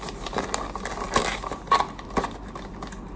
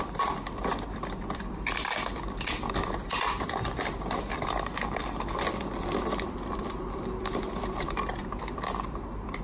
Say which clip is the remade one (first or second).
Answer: second